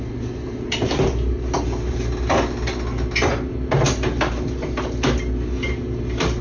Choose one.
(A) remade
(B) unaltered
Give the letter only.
B